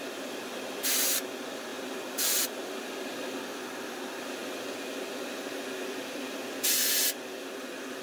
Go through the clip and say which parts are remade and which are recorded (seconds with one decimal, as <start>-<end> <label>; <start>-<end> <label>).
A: 0.0-8.0 recorded

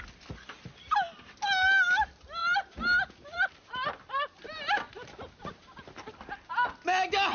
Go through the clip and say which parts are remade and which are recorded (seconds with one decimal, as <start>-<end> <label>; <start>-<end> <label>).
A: 0.0-2.4 recorded; 2.4-5.4 remade; 5.4-7.3 recorded

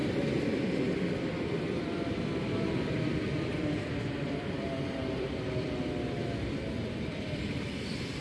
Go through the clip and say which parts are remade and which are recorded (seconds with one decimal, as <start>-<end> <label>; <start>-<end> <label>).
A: 0.0-8.2 remade

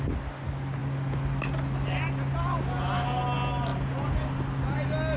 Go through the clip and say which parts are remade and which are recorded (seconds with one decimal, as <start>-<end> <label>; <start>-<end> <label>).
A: 0.0-5.2 recorded